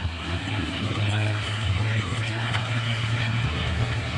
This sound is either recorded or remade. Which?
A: remade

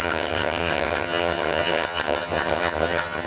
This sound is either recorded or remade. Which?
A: remade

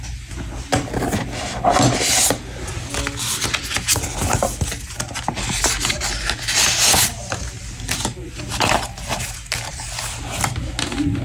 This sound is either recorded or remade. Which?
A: recorded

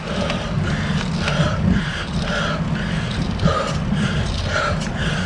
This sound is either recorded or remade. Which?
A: recorded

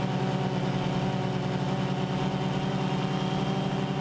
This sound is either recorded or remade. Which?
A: recorded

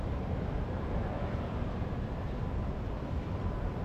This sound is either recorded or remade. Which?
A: remade